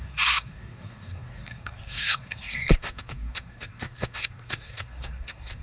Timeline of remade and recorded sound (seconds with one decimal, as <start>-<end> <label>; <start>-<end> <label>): 0.0-5.6 remade